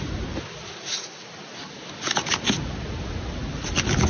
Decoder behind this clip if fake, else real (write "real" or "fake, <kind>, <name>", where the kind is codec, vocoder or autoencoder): real